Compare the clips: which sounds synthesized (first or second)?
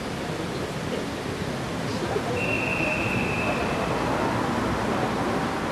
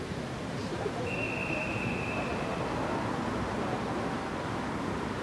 second